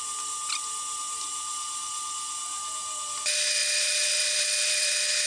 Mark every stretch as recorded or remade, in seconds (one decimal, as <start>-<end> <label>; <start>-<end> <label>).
0.0-1.3 recorded; 1.3-2.4 remade; 2.4-3.6 recorded; 3.6-5.3 remade